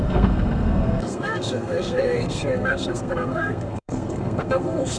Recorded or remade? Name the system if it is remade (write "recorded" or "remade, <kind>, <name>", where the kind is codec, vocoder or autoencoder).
remade, codec, SNAC